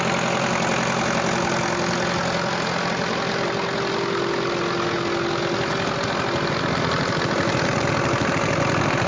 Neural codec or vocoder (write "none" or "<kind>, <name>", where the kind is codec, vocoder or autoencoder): none